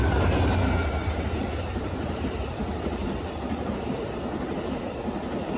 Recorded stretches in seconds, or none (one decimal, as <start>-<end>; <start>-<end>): 0.0-0.8; 4.2-5.6